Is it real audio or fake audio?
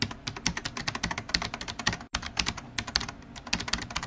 real